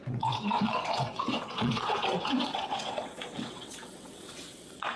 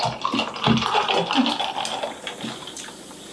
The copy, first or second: first